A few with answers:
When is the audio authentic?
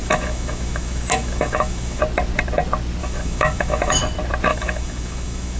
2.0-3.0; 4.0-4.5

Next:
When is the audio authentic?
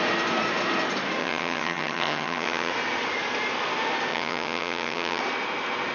0.0-1.2; 2.7-4.1; 5.2-5.9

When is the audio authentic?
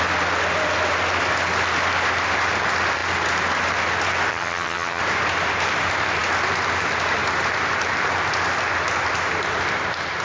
0.0-4.3; 5.0-10.2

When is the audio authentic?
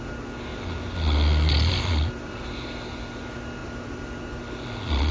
0.0-3.6; 4.2-5.1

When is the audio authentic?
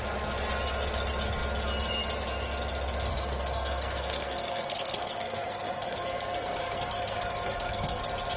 0.0-3.1; 8.0-8.4